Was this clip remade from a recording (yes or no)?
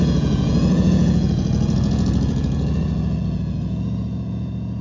yes